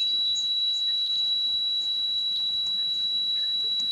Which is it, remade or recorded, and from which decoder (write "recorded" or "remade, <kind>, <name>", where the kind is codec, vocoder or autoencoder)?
recorded